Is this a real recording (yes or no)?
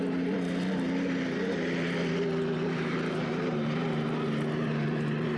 yes